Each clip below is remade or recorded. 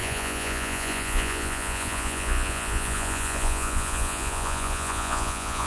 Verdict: remade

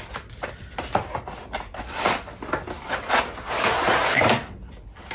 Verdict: recorded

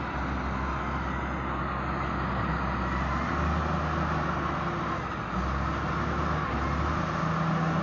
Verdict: recorded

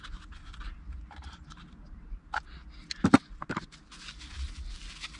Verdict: recorded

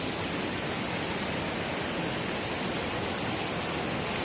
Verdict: recorded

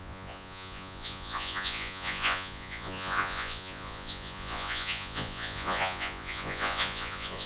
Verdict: remade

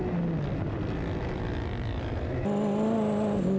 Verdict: recorded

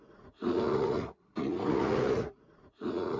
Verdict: remade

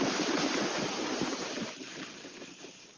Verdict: remade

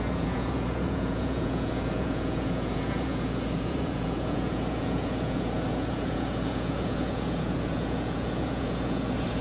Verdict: remade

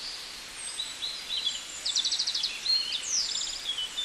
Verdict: remade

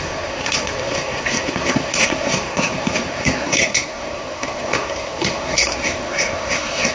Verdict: remade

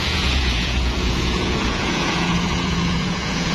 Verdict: remade